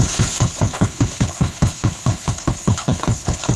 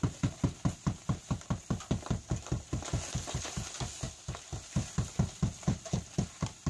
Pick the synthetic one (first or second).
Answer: first